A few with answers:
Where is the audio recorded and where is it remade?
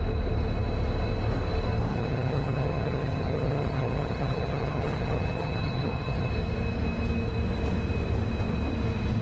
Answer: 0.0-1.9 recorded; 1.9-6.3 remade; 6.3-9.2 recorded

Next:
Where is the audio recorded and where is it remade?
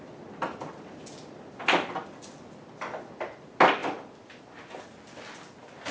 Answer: 0.0-5.9 recorded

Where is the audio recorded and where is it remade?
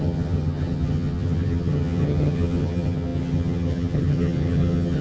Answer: 0.0-5.0 remade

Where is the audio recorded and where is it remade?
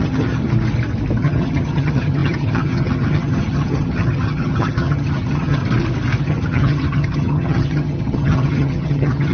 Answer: 0.0-0.4 remade; 0.4-1.2 recorded; 1.2-5.6 remade; 5.6-6.2 recorded; 6.2-9.3 remade